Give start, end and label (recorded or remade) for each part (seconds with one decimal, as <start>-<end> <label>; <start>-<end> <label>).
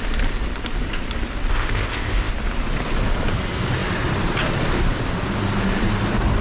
0.0-1.5 recorded; 1.5-2.3 remade; 2.3-6.4 recorded